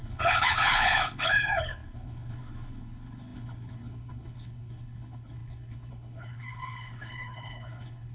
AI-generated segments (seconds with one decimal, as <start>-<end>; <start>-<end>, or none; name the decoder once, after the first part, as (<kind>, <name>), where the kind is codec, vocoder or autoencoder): 0.0-8.1 (codec, HILCodec)